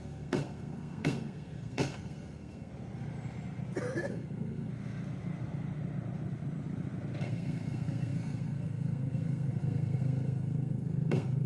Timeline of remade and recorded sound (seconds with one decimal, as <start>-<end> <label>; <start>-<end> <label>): 0.0-2.7 remade; 2.7-4.1 recorded; 4.1-4.7 remade; 4.7-7.2 recorded; 7.2-11.5 remade